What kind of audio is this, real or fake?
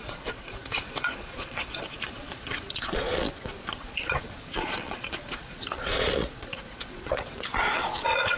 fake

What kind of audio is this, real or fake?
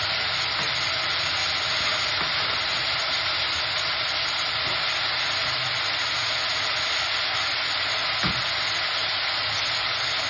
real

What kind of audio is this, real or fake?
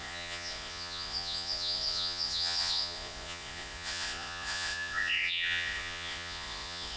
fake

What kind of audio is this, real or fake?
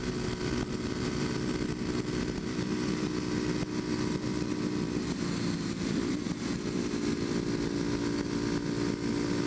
real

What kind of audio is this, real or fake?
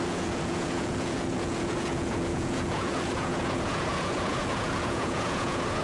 fake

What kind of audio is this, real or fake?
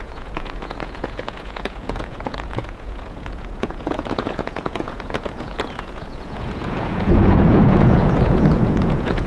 fake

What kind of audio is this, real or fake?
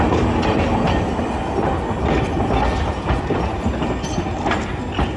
real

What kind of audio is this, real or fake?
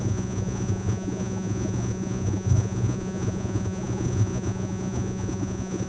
fake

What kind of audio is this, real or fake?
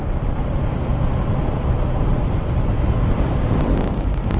real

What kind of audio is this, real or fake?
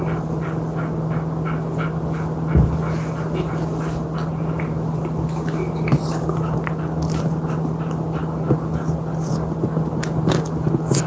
real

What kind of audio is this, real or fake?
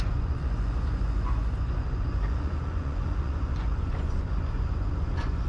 fake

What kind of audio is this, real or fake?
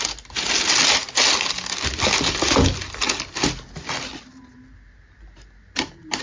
real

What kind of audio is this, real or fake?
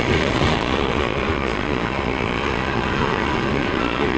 fake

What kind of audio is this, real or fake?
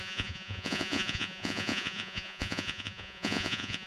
fake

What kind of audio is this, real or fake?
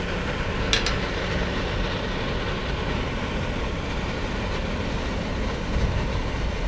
real